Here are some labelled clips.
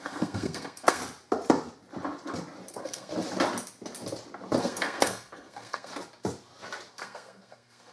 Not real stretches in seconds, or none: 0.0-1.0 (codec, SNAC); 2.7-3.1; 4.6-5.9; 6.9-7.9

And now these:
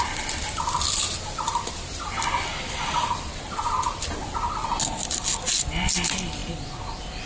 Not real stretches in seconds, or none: none

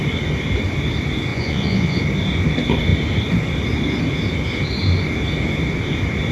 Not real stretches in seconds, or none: 1.3-2.0 (vocoder, Vocos)

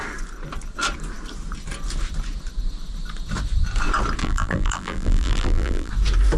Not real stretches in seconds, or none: 4.2-5.9 (vocoder, BigVGAN v2)